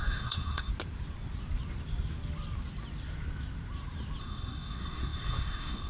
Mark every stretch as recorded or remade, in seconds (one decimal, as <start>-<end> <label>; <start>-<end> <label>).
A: 0.0-0.7 remade; 0.7-4.2 recorded; 4.2-5.9 remade